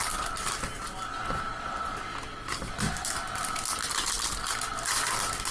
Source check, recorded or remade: recorded